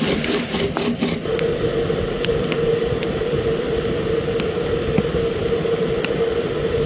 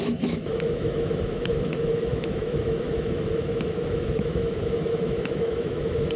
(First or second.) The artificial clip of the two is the second